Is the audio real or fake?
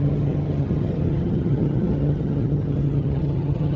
fake